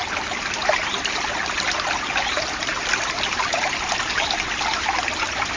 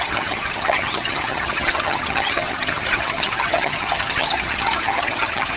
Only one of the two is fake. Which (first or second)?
second